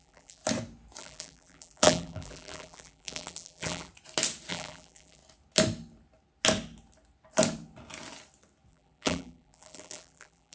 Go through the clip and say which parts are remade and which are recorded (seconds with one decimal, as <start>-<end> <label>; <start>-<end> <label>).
0.0-0.4 remade; 0.4-1.0 recorded; 1.0-3.9 remade; 3.9-4.5 recorded; 4.5-5.2 remade; 5.2-8.7 recorded; 8.7-10.5 remade